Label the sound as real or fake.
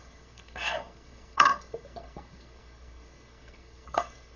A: fake